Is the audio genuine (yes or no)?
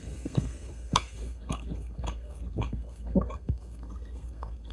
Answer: no